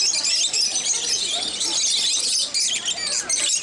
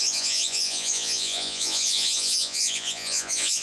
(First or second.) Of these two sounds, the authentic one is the first